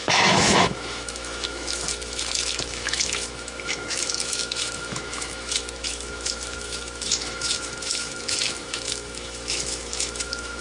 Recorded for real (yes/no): no